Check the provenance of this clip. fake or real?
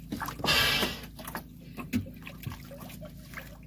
real